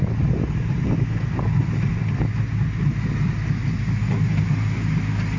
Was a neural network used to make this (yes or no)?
no